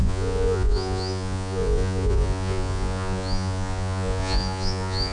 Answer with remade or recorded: remade